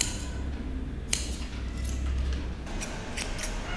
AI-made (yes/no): no